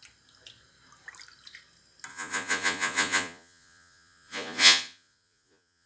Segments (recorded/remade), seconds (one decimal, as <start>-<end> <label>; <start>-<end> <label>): 0.0-2.1 recorded; 2.1-5.9 remade